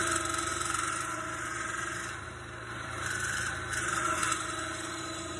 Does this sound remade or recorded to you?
remade